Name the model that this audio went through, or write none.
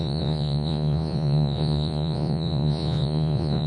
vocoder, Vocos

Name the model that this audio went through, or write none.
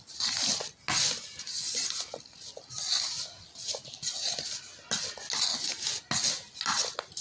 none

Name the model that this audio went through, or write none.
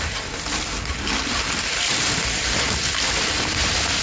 none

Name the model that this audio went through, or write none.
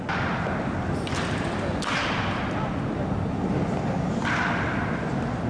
none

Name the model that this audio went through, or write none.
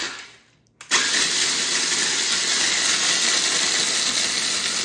none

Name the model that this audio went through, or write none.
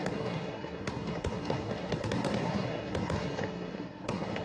codec, SNAC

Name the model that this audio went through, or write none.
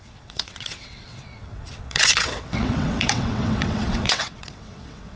vocoder, WaveNeXt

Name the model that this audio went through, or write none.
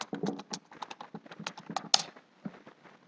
none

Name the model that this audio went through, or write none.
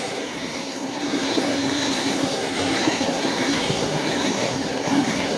codec, SNAC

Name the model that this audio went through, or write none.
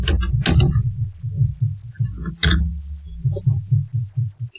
none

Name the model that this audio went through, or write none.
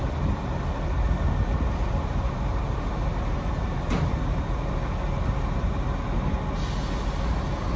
none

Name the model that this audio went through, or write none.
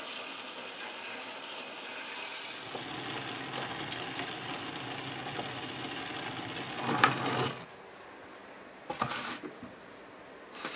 none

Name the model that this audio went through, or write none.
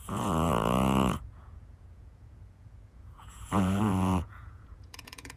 vocoder, Vocos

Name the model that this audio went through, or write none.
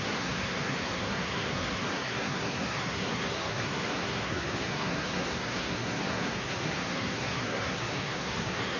codec, SNAC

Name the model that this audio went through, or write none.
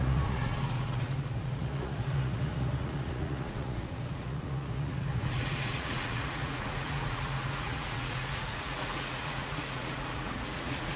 vocoder, Vocos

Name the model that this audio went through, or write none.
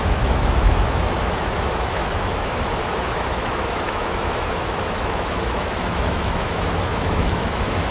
autoencoder, DAC-VAE